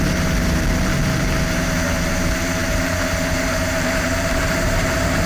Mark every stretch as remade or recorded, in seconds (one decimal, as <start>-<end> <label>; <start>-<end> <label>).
0.0-5.3 remade